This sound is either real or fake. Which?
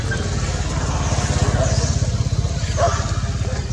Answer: real